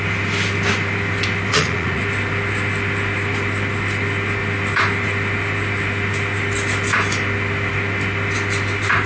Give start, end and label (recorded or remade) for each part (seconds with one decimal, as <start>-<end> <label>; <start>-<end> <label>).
0.0-1.5 recorded; 1.5-2.0 remade; 2.0-9.1 recorded